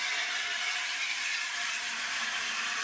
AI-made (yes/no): yes